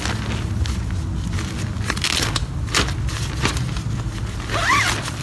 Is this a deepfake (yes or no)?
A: no